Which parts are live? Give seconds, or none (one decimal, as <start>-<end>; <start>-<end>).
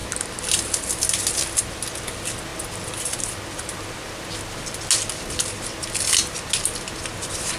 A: 0.0-7.6